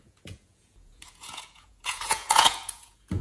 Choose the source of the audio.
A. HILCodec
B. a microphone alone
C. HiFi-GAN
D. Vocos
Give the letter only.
D